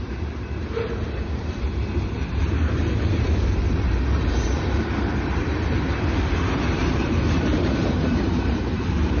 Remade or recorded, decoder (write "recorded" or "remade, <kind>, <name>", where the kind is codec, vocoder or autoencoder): remade, vocoder, BigVGAN v2